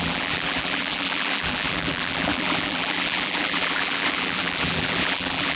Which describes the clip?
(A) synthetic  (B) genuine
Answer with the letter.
A